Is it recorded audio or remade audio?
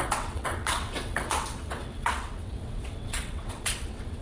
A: remade